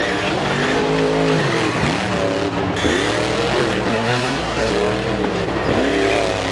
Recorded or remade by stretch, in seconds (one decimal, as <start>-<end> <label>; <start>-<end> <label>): 0.0-3.9 recorded; 3.9-4.7 remade; 4.7-6.5 recorded